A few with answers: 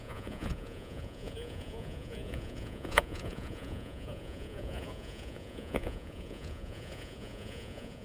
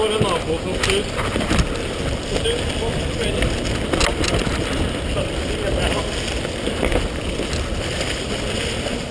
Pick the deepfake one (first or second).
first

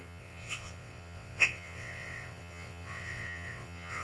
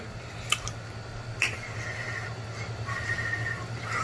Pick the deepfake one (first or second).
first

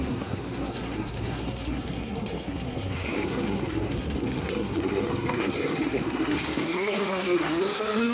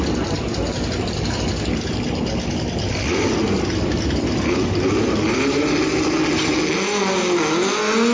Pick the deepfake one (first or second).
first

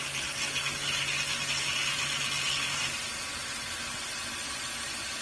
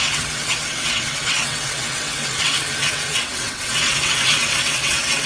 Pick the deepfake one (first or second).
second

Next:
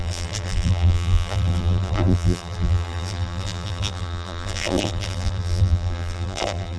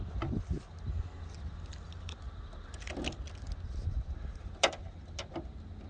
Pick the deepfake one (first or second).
first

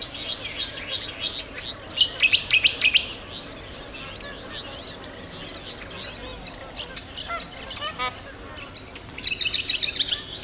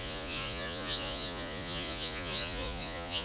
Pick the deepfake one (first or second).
second